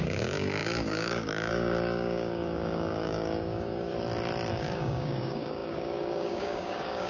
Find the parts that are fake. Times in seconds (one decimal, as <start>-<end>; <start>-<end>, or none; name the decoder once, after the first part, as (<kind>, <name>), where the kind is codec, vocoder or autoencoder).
0.0-3.9 (codec, DAC); 4.5-7.1